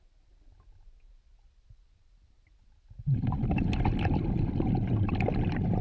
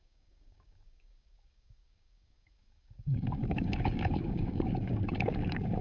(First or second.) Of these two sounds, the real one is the first